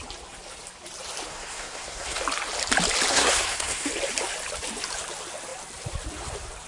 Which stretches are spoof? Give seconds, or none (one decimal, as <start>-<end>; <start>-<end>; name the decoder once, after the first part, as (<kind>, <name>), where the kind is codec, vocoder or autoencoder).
1.3-2.2 (codec, SNAC); 3.1-3.9